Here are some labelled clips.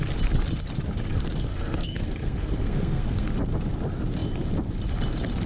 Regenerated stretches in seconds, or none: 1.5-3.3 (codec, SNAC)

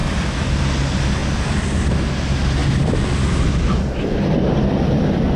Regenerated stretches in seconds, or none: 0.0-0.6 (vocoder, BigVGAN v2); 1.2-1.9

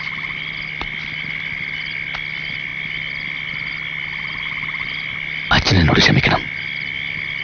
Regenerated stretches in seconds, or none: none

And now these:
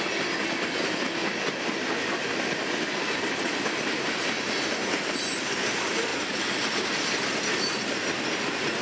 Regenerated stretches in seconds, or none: 6.1-6.9 (vocoder, BigVGAN v2)

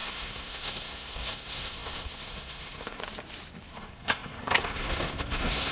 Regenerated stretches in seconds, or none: 0.0-3.0 (codec, SNAC); 3.7-5.7